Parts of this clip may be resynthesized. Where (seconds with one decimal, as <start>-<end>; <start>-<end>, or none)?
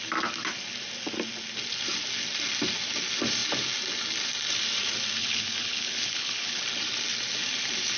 5.2-6.6